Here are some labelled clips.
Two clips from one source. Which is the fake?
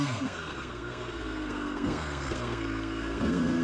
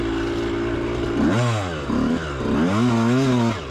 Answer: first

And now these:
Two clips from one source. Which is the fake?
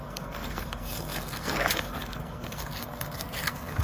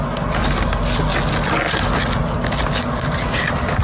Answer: first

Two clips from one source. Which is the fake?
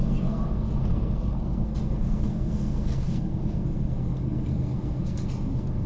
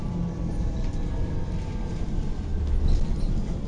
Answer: first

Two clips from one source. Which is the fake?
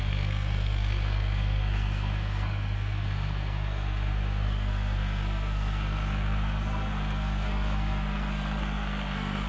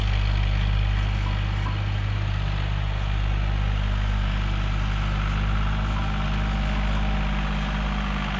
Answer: first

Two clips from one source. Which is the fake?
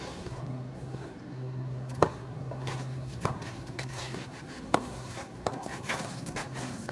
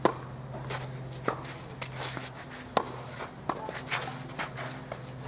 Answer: first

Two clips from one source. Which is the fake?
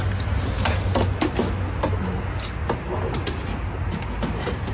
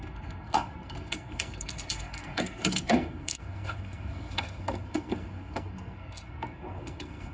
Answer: second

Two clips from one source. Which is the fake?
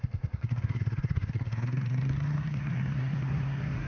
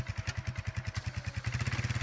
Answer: first